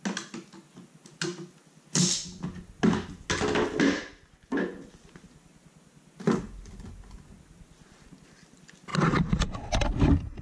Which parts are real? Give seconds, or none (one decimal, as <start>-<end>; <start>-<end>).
0.0-10.4